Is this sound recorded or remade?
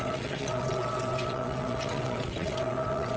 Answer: remade